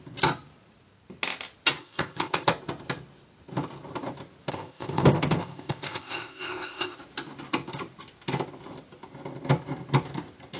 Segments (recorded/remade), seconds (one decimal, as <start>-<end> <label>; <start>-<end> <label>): 0.0-1.8 recorded; 1.8-2.5 remade; 2.5-4.5 recorded; 4.5-7.0 remade; 7.0-10.6 recorded